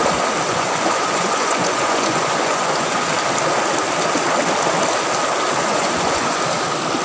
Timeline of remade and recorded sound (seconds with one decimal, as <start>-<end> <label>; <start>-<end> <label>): 0.0-0.5 recorded; 0.5-3.1 remade; 3.1-5.6 recorded; 5.6-6.4 remade; 6.4-7.0 recorded